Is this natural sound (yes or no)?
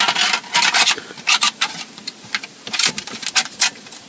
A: yes